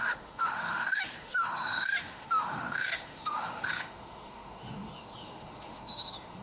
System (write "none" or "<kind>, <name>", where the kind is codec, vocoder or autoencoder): autoencoder, DAC-VAE